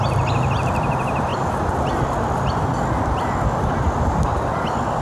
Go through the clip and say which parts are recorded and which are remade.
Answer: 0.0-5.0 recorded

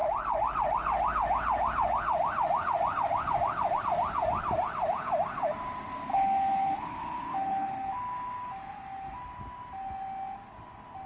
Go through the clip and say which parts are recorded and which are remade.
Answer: 0.0-6.1 recorded; 6.1-7.9 remade; 7.9-11.1 recorded

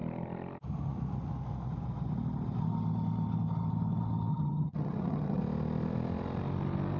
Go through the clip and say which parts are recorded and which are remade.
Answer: 0.0-4.3 recorded; 4.3-5.4 remade; 5.4-7.0 recorded

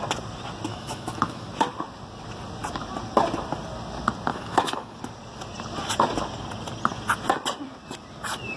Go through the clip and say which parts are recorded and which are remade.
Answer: 0.0-0.7 recorded; 0.7-1.5 remade; 1.5-4.3 recorded; 4.3-5.0 remade; 5.0-8.6 recorded

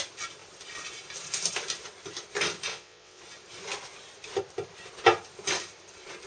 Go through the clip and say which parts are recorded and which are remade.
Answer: 0.0-2.7 recorded; 2.7-3.2 remade; 3.2-6.3 recorded

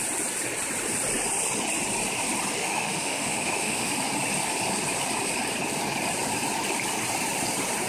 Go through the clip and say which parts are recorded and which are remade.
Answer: 0.0-2.6 recorded; 2.6-3.9 remade; 3.9-7.9 recorded

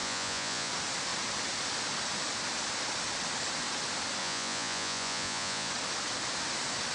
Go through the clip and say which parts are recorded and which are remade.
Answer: 0.0-0.7 remade; 0.7-4.2 recorded; 4.2-5.7 remade; 5.7-6.9 recorded

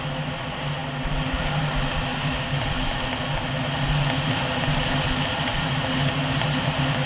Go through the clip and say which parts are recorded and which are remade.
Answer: 0.0-7.1 recorded